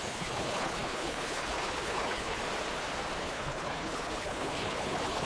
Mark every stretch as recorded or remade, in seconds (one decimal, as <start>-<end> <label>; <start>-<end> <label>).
0.0-2.4 remade; 2.4-3.2 recorded; 3.2-5.3 remade